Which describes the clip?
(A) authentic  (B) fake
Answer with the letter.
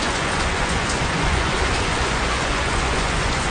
B